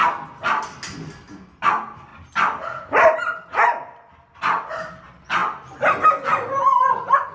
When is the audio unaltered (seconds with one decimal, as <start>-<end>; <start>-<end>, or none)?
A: 0.0-7.3